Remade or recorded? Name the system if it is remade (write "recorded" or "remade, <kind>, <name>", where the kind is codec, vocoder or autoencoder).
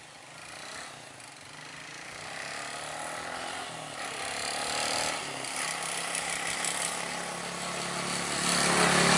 recorded